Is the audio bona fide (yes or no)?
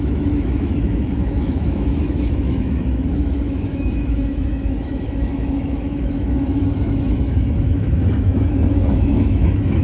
no